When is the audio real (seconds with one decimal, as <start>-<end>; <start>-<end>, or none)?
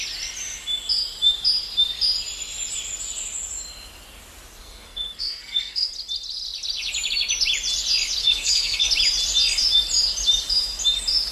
0.0-4.6; 5.9-8.2; 8.9-11.3